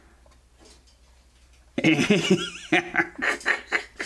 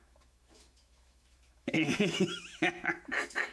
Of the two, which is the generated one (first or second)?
second